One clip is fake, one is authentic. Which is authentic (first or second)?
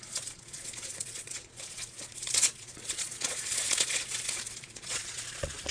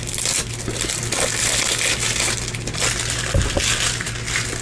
second